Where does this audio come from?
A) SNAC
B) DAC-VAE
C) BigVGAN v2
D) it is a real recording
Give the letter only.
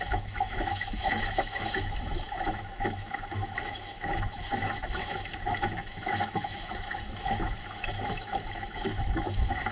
B